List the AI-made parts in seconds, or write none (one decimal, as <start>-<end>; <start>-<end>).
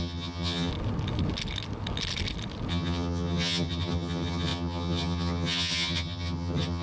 0.0-0.7; 2.7-6.8